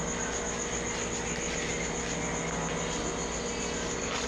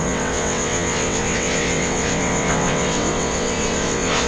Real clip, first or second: first